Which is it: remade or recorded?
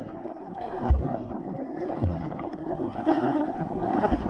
remade